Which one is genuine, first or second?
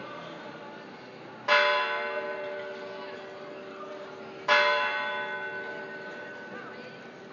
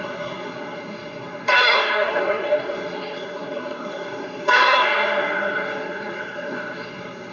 first